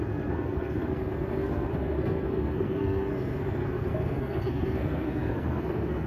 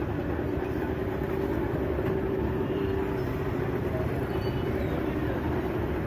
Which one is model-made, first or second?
first